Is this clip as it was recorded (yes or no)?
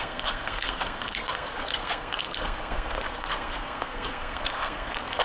no